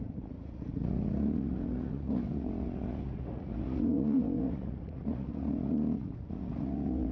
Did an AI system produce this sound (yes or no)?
yes